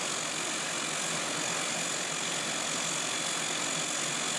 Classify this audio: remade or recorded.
recorded